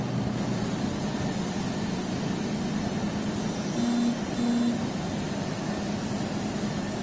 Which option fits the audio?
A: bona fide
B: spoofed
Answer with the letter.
A